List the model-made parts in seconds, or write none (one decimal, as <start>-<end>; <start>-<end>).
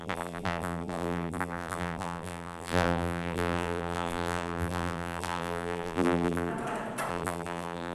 0.0-6.5; 7.1-7.9